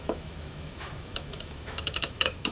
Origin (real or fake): fake